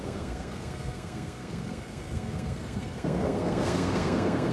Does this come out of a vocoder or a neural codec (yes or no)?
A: yes